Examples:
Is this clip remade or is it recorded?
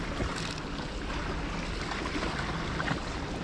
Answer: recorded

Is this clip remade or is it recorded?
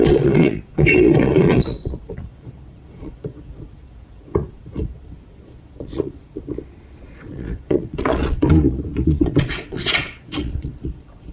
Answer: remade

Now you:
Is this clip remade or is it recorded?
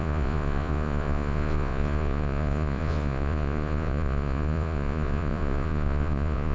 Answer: remade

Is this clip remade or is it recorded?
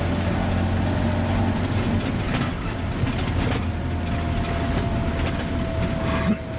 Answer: recorded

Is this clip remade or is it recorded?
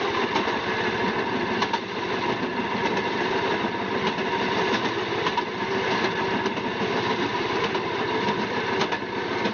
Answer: recorded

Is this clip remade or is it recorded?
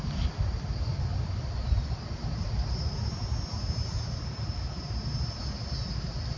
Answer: recorded